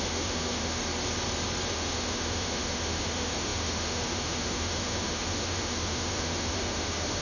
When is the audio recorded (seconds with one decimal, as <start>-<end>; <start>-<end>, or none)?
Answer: 0.8-1.7

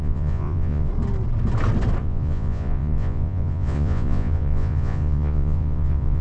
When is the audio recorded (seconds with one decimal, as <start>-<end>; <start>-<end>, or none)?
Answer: 0.9-2.0

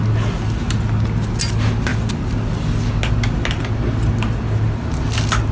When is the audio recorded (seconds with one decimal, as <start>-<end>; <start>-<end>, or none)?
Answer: 0.0-5.5

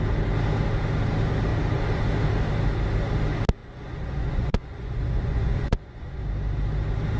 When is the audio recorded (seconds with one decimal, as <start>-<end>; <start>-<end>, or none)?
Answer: 0.0-3.6; 6.2-7.2

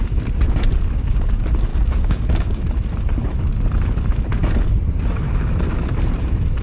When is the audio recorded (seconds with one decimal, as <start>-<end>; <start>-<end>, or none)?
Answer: 0.0-1.7; 2.6-6.6

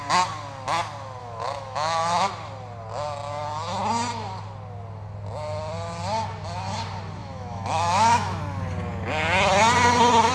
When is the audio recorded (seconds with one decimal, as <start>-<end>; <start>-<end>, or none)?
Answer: 0.0-1.2; 2.3-7.2; 8.4-10.3